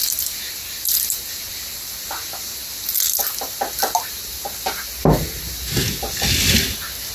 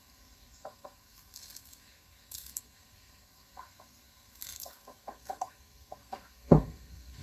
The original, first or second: first